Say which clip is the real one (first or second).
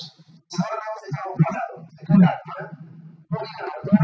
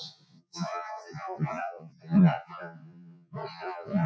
first